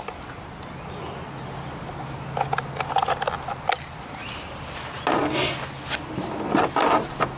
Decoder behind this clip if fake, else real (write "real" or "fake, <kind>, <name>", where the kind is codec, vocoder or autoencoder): real